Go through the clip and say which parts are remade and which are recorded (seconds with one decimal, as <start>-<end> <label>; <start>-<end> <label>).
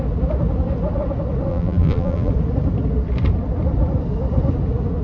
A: 0.0-1.5 recorded; 1.5-2.3 remade; 2.3-5.0 recorded